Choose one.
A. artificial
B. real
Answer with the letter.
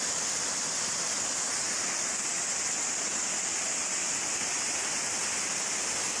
B